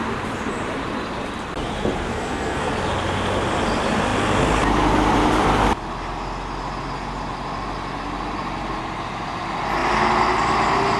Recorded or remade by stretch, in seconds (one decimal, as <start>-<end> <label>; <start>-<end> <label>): 0.0-2.1 recorded; 2.1-2.7 remade; 2.7-11.0 recorded